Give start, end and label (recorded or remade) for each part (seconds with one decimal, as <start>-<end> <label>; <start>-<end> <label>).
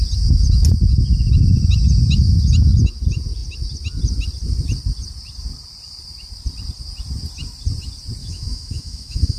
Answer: 0.0-8.2 recorded; 8.2-9.4 remade